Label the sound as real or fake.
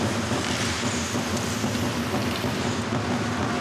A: real